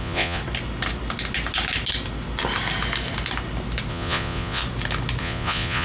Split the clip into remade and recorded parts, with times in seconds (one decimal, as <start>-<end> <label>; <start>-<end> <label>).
0.0-0.4 remade; 0.4-3.9 recorded; 3.9-4.6 remade; 4.6-5.2 recorded; 5.2-5.8 remade